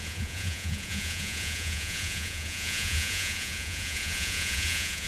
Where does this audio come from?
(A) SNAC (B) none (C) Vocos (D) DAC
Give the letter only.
C